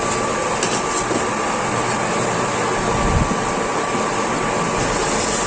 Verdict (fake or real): real